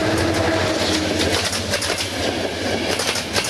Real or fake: real